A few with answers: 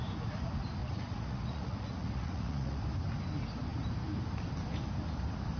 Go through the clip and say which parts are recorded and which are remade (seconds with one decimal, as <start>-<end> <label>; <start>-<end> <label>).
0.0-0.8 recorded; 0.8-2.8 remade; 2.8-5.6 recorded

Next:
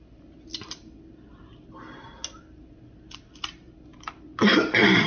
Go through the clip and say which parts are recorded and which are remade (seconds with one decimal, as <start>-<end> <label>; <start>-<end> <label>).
0.0-5.1 recorded

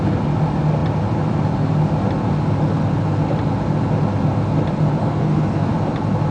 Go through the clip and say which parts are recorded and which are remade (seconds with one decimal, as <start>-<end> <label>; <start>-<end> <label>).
0.0-5.0 recorded; 5.0-5.7 remade; 5.7-6.3 recorded

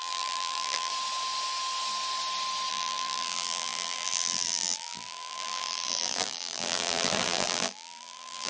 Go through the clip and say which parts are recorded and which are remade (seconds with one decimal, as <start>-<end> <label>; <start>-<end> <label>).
0.0-0.9 remade; 0.9-2.7 recorded; 2.7-8.5 remade

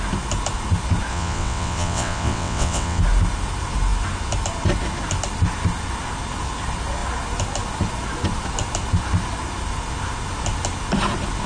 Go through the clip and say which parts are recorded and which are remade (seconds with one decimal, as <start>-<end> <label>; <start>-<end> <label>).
0.0-1.1 recorded; 1.1-3.0 remade; 3.0-11.5 recorded